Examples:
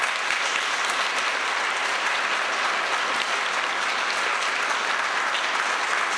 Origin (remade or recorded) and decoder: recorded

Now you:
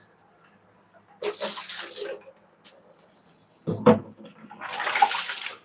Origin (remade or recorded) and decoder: recorded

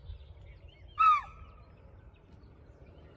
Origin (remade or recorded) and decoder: recorded